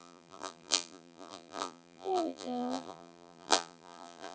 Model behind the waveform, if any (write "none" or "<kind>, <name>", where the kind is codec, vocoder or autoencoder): vocoder, BigVGAN v2